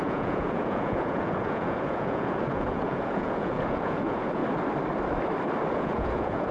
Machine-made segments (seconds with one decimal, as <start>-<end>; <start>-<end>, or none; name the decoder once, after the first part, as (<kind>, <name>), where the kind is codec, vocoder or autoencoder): 0.0-4.4 (vocoder, Vocos); 5.7-6.5